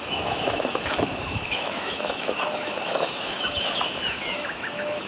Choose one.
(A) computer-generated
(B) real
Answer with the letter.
A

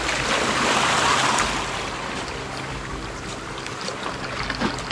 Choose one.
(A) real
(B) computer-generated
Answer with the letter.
A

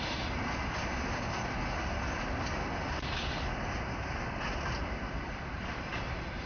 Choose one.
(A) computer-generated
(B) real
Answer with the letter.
B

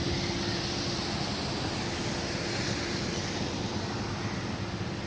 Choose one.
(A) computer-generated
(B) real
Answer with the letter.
B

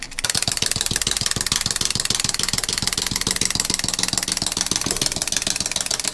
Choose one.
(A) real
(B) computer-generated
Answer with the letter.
A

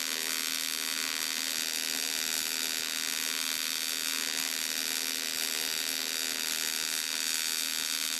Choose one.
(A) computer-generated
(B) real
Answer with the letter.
B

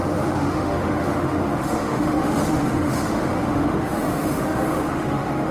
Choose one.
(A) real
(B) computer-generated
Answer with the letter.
B